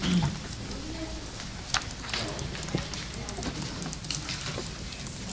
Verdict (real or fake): real